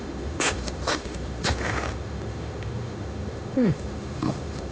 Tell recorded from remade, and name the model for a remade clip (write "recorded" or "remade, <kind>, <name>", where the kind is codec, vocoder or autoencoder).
remade, autoencoder, DAC-VAE